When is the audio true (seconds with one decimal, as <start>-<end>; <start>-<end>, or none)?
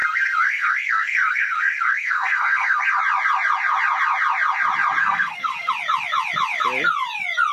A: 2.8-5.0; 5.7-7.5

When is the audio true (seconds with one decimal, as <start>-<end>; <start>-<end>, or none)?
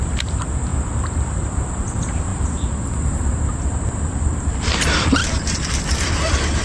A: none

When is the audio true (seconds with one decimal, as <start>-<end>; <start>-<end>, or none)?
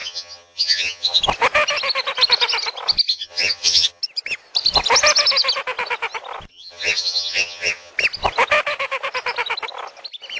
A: 1.2-3.1; 4.0-6.5; 7.9-10.4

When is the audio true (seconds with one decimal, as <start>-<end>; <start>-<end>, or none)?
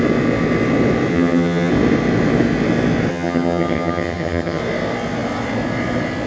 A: 0.0-1.1; 1.7-3.1; 4.6-6.3